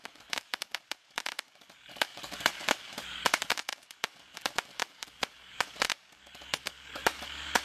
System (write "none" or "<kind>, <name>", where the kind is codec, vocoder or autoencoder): codec, DAC